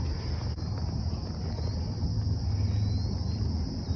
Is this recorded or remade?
recorded